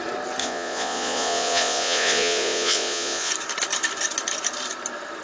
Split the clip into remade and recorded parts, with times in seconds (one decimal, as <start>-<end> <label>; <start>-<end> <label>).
0.0-0.4 recorded; 0.4-3.3 remade; 3.3-5.2 recorded

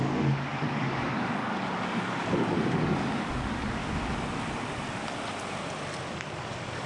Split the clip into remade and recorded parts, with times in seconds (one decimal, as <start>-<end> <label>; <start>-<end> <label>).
0.0-3.8 remade; 3.8-6.1 recorded; 6.1-6.9 remade

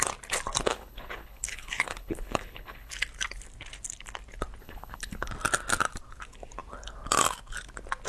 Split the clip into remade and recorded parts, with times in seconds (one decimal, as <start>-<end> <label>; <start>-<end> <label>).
0.0-0.7 recorded; 0.7-2.9 remade; 2.9-4.6 recorded; 4.6-5.3 remade; 5.3-8.1 recorded

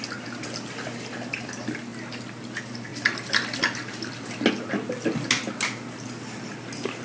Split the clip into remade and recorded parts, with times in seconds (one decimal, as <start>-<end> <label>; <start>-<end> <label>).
0.0-7.0 recorded

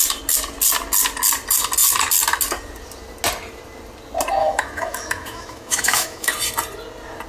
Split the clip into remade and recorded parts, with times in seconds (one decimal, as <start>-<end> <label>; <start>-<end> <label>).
0.0-4.4 recorded; 4.4-6.3 remade; 6.3-7.3 recorded

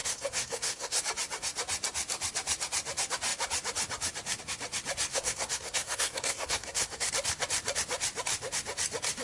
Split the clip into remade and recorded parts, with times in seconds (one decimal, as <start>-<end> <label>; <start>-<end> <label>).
0.0-1.0 remade; 1.0-5.1 recorded; 5.1-7.1 remade; 7.1-9.2 recorded

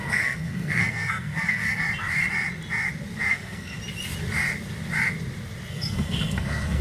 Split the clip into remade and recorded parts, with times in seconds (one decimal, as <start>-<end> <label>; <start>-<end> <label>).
0.0-1.8 remade; 1.8-3.3 recorded; 3.3-3.8 remade; 3.8-5.7 recorded; 5.7-6.8 remade

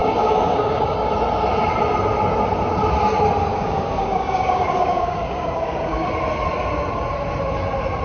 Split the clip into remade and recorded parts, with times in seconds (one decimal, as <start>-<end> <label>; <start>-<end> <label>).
0.0-1.1 remade; 1.1-3.5 recorded; 3.5-6.1 remade; 6.1-8.0 recorded